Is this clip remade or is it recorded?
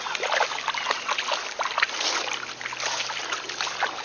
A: recorded